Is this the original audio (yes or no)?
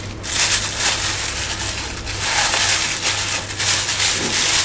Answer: yes